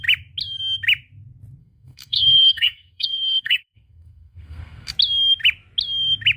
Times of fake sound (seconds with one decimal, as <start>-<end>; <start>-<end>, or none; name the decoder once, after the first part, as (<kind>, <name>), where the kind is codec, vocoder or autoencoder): 1.6-4.9 (codec, SNAC)